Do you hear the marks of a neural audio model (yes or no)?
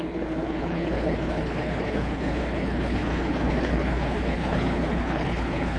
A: yes